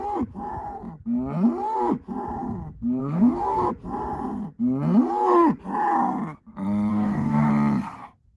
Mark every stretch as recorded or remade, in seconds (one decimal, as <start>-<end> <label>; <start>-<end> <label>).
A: 0.0-3.0 recorded; 3.0-3.7 remade; 3.7-6.9 recorded; 6.9-7.5 remade; 7.5-8.4 recorded